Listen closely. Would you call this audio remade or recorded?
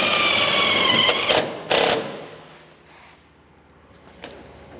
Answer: recorded